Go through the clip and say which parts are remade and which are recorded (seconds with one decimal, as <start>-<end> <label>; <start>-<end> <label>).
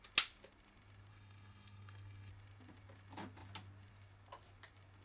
0.0-1.1 recorded; 1.1-2.3 remade; 2.3-5.0 recorded